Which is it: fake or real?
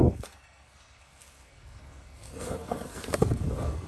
fake